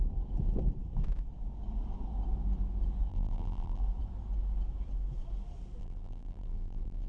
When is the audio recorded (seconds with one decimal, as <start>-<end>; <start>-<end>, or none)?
0.0-3.1; 3.8-5.8